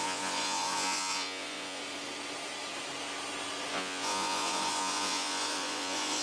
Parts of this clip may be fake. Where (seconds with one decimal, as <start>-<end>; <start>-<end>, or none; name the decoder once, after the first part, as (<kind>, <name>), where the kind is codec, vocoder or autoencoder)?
0.0-1.8 (vocoder, Vocos); 3.7-6.2